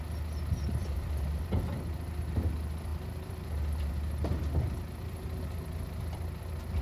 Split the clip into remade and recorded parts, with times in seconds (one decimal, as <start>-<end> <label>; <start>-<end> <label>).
0.0-0.8 recorded; 0.8-1.8 remade; 1.8-2.9 recorded; 2.9-3.8 remade; 3.8-6.8 recorded